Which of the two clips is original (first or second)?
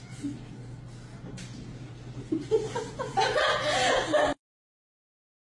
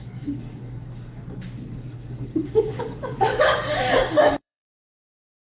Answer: first